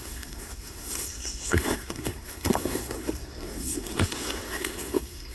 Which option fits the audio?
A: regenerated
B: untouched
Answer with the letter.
A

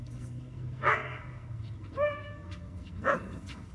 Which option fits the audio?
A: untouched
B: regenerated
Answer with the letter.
B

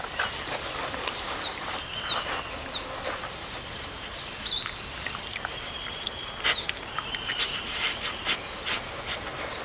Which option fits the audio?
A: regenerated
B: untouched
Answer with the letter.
B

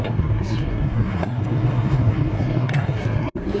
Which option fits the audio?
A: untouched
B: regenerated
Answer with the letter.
B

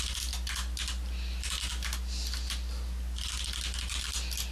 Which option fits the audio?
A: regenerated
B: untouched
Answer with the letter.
B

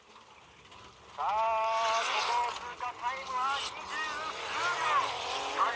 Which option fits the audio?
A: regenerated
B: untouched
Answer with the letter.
B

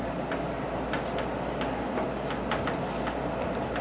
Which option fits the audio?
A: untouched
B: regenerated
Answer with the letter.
A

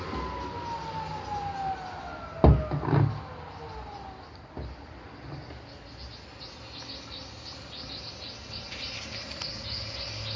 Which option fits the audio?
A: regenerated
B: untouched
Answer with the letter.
B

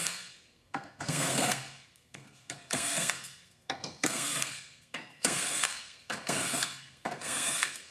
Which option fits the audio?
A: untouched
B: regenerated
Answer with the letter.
B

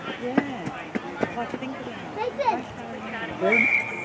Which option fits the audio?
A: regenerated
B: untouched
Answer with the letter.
B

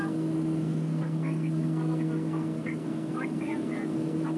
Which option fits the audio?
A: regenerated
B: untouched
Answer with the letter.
A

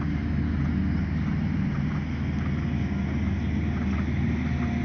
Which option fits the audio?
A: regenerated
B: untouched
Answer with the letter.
B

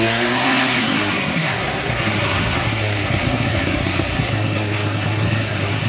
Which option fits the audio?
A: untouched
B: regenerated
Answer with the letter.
B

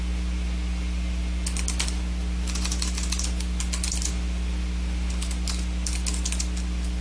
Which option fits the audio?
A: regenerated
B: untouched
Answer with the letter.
B